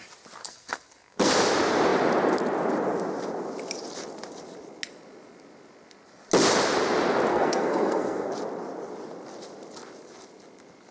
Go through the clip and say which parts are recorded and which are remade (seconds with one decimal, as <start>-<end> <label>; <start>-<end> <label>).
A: 0.0-0.4 recorded; 0.4-1.3 remade; 1.3-7.3 recorded; 7.3-8.3 remade; 8.3-10.9 recorded